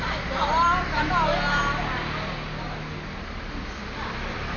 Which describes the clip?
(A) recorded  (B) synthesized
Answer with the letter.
A